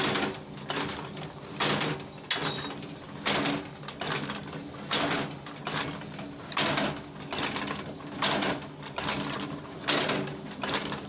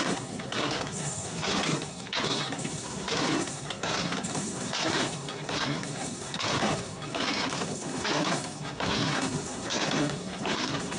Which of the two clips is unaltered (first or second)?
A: first